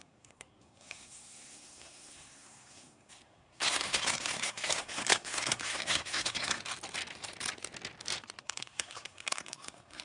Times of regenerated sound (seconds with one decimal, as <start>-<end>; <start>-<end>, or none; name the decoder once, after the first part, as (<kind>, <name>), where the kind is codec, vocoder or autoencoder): 0.0-6.6 (codec, SNAC); 8.4-10.0